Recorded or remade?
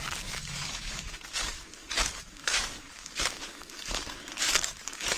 remade